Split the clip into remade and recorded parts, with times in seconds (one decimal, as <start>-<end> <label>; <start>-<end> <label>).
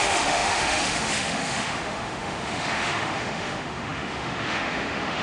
0.0-5.2 remade